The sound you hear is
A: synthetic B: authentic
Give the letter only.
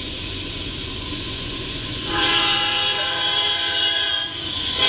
A